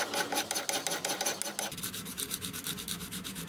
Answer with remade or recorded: recorded